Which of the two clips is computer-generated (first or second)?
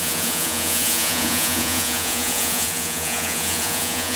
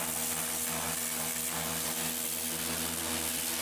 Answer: first